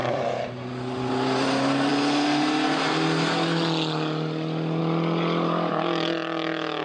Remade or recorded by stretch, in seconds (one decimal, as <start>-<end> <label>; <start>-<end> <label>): 0.0-6.8 recorded